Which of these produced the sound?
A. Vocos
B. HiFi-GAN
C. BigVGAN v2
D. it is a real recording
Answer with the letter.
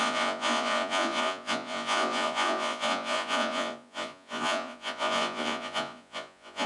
A